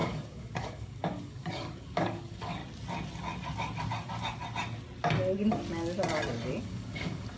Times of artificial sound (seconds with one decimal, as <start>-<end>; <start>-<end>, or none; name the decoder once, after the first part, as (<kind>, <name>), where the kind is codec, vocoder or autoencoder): 0.0-2.6 (codec, DAC); 6.6-7.4